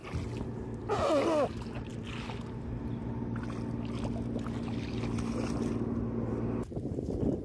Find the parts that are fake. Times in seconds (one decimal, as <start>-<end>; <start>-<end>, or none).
none